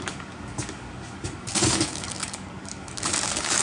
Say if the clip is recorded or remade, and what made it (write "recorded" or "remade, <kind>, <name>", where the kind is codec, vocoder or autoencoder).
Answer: remade, codec, DAC